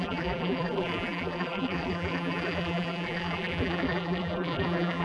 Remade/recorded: remade